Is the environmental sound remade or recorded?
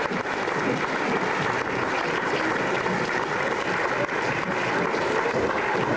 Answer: recorded